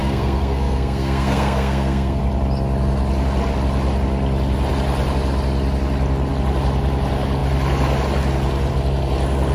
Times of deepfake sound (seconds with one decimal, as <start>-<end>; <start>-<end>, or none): 0.0-2.2